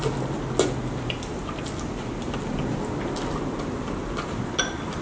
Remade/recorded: recorded